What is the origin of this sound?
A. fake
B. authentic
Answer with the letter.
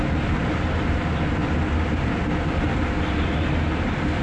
B